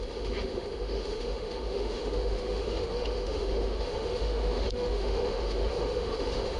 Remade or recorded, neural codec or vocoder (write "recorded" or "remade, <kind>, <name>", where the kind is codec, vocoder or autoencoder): remade, autoencoder, DAC-VAE